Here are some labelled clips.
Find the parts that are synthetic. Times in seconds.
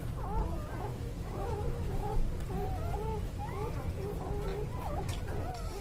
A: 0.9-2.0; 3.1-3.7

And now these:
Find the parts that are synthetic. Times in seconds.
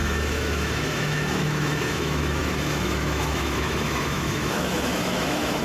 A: 0.0-5.6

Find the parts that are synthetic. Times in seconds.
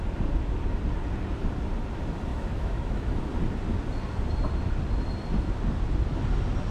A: 2.3-3.2